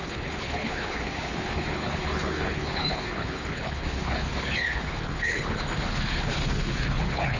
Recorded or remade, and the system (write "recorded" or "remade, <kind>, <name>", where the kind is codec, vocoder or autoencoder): remade, codec, HILCodec